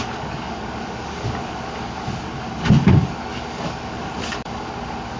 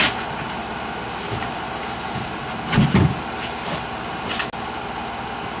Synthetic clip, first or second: first